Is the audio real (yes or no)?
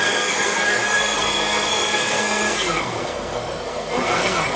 no